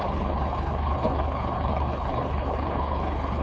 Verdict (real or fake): fake